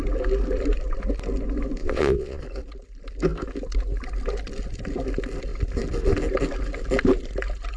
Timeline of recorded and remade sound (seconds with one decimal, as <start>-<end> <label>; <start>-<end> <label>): 0.0-1.8 recorded; 1.8-2.4 remade; 2.4-7.8 recorded